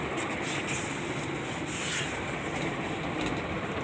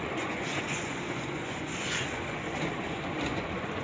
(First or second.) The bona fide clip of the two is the first